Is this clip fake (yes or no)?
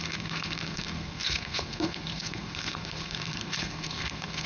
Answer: yes